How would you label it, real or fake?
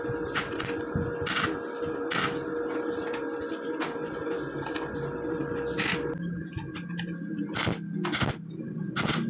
real